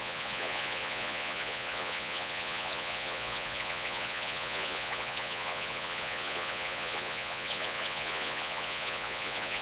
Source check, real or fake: fake